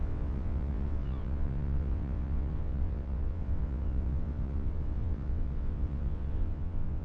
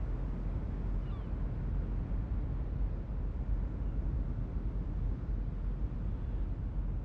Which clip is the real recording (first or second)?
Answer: second